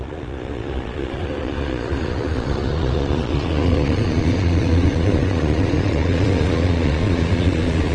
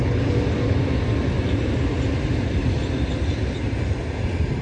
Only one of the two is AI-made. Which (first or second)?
first